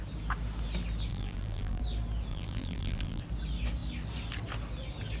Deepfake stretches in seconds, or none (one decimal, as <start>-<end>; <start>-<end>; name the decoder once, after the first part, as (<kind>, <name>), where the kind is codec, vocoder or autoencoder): 1.1-1.8 (vocoder, BigVGAN v2); 2.3-3.2

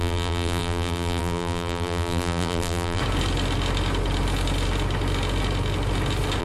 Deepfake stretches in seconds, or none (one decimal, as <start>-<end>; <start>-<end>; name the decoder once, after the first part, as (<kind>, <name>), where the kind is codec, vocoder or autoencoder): 0.0-3.0 (vocoder, BigVGAN v2)

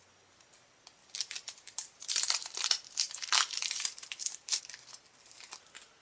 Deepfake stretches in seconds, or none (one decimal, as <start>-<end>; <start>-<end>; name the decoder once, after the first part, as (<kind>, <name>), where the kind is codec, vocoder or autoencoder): 1.0-4.6 (vocoder, BigVGAN v2)

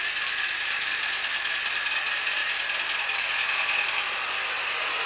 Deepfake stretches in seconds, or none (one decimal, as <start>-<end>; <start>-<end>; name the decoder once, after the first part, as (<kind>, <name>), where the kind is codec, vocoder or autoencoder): 0.0-2.4 (vocoder, BigVGAN v2)

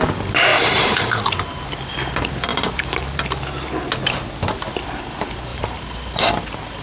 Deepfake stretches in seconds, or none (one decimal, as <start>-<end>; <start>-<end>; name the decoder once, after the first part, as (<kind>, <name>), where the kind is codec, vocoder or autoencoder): 0.5-1.6 (vocoder, BigVGAN v2); 2.5-3.4; 5.5-6.2

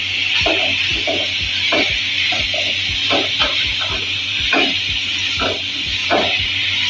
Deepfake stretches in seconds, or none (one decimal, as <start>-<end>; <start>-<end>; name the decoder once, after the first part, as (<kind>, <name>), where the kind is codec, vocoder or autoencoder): 3.0-5.3 (vocoder, BigVGAN v2); 6.0-6.9